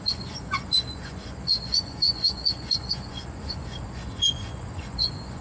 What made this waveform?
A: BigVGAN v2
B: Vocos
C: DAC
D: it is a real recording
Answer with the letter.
B